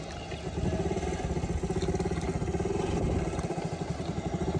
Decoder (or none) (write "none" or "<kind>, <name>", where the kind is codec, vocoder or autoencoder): none